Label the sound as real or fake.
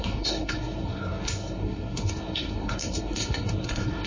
fake